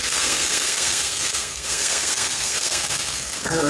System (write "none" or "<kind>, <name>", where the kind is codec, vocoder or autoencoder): codec, SNAC